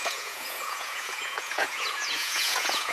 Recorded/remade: remade